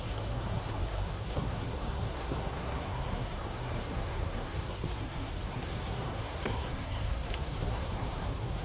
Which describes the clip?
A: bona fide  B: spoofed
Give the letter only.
B